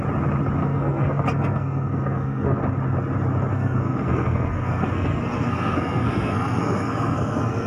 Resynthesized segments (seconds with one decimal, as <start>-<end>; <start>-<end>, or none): 0.6-2.6; 3.5-7.7